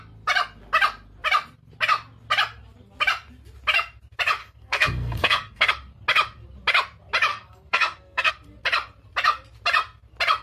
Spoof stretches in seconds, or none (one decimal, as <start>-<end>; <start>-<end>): 4.4-5.7; 7.3-8.3